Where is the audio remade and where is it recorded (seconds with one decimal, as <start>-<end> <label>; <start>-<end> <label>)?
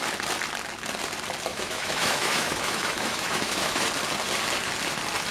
0.0-1.5 recorded; 1.5-3.9 remade; 3.9-5.3 recorded